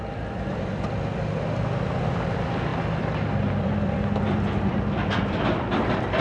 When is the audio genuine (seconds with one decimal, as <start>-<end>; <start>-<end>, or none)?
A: 2.7-3.6